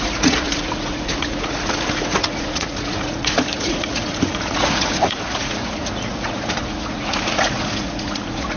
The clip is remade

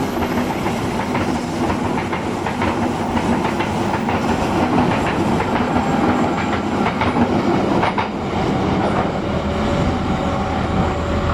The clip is recorded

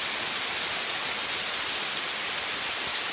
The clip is recorded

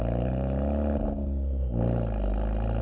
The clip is recorded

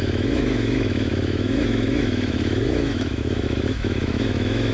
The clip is remade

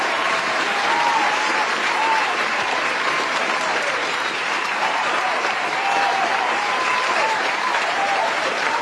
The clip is remade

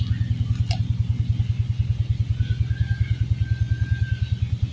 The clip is recorded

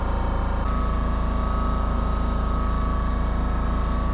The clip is recorded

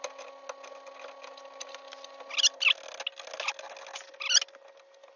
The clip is recorded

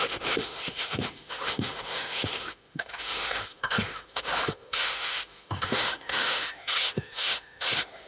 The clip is remade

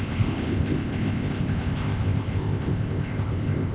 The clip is remade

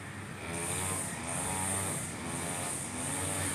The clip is recorded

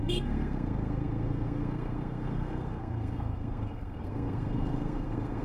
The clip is remade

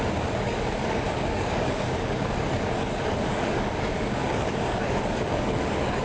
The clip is remade